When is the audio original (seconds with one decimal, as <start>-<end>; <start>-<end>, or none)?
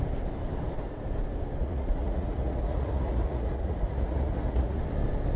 0.0-1.6; 4.8-5.4